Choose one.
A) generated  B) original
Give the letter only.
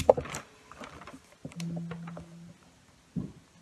B